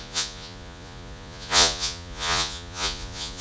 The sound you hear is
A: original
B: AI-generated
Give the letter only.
B